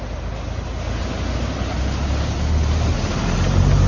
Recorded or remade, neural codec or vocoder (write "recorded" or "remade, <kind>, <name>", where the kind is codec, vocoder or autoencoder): recorded